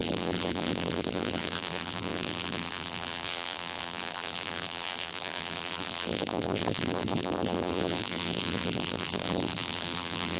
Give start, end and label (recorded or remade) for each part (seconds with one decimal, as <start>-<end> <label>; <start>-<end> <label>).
0.0-10.4 remade